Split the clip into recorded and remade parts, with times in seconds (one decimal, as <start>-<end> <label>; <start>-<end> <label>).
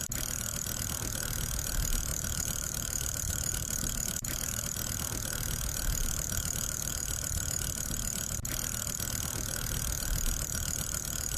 0.0-2.1 recorded; 2.1-4.6 remade; 4.6-6.0 recorded; 6.0-6.9 remade; 6.9-11.4 recorded